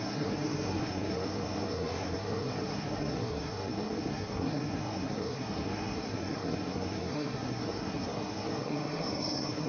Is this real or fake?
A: fake